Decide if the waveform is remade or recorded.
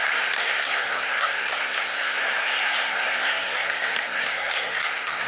remade